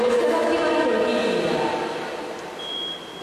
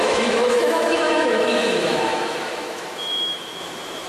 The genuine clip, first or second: first